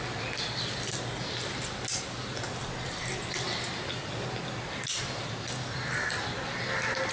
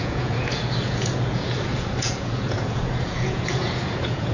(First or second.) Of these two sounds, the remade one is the second